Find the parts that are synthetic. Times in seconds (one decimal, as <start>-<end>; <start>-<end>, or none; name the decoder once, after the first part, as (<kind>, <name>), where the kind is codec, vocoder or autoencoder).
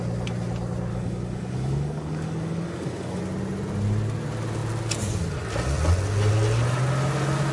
0.9-3.2 (codec, DAC)